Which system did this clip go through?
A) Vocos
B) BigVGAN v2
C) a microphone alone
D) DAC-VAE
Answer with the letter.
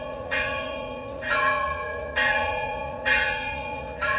A